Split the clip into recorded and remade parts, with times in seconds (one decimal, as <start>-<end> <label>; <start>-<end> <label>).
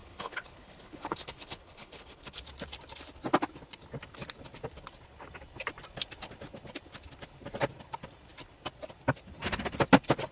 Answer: 0.0-2.4 remade; 2.4-10.3 recorded